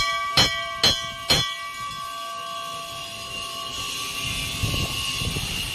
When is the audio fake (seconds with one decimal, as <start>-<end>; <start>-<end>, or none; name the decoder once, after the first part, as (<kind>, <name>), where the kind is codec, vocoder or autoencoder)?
none